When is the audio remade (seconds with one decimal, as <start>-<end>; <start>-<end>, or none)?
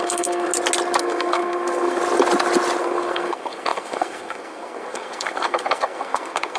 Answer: 0.0-0.5; 1.0-2.0; 2.8-6.6